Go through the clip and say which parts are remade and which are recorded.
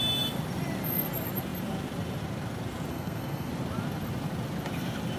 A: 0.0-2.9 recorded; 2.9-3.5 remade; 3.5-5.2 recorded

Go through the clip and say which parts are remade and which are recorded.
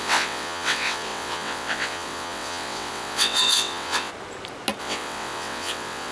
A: 0.0-4.1 remade; 4.1-4.8 recorded; 4.8-6.1 remade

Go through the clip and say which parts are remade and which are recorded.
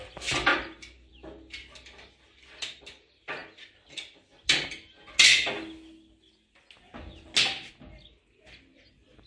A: 0.0-9.3 recorded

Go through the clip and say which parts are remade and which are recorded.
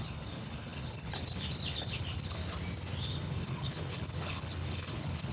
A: 0.0-2.4 remade; 2.4-3.0 recorded; 3.0-5.3 remade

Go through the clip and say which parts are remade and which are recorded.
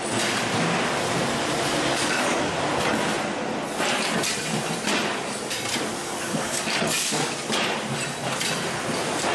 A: 0.0-1.9 recorded; 1.9-2.4 remade; 2.4-6.0 recorded; 6.0-7.3 remade; 7.3-9.3 recorded